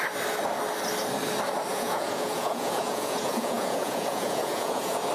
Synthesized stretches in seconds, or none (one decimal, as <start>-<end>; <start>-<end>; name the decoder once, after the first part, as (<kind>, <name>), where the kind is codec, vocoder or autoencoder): 1.7-5.1 (vocoder, Vocos)